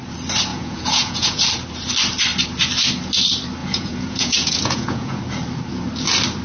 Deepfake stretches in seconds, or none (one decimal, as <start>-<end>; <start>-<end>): 0.5-1.4; 3.6-5.2

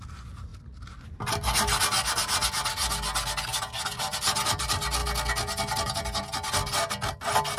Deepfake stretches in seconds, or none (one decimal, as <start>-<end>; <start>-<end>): none

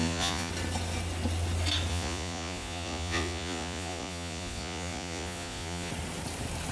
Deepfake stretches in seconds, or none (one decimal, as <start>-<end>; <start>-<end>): 0.0-0.5; 1.9-5.9

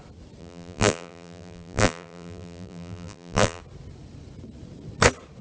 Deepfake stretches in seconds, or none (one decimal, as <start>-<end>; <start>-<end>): 0.4-3.6

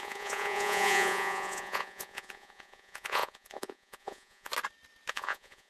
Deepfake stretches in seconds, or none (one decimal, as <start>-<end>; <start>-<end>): 0.0-4.5; 5.1-5.7

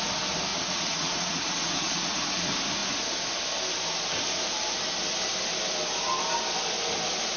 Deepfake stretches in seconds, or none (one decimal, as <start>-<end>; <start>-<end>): 0.5-2.3